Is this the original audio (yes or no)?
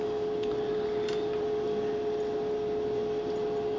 yes